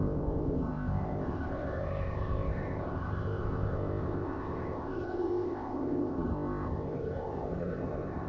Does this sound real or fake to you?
fake